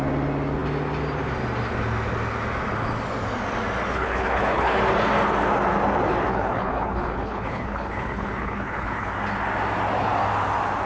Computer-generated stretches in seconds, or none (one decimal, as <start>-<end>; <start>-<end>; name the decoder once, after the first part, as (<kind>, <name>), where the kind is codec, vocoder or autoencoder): 3.9-4.8 (codec, HILCodec); 6.3-9.1